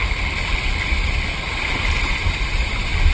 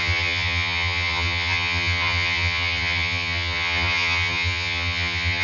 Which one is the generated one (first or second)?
second